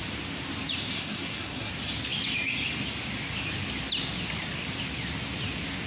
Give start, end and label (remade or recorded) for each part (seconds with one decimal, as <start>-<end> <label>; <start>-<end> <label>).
0.0-0.9 recorded; 0.9-1.7 remade; 1.7-5.9 recorded